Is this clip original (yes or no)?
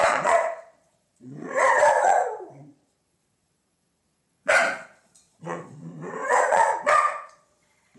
no